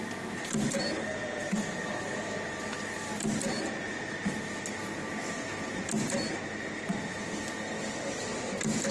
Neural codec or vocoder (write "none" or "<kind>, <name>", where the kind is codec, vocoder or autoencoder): none